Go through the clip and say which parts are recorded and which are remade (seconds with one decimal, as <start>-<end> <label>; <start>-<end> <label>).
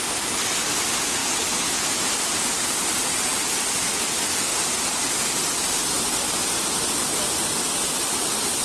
0.0-8.6 recorded